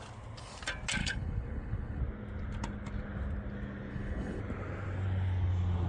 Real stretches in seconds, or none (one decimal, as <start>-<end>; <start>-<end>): 0.0-1.0; 2.0-3.9; 4.4-5.9